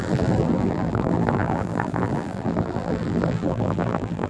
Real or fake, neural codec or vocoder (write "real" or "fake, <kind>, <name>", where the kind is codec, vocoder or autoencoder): fake, vocoder, BigVGAN v2